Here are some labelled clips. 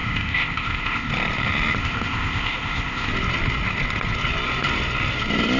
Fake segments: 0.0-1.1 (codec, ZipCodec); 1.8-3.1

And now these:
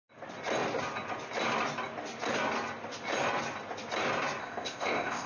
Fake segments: 4.4-5.3 (codec, ZipCodec)

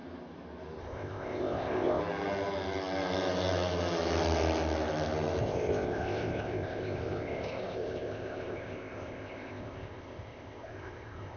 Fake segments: 0.8-2.0 (codec, ZipCodec); 5.4-11.4

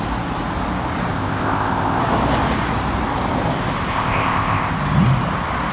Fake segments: 1.1-2.0 (codec, ZipCodec); 3.9-4.7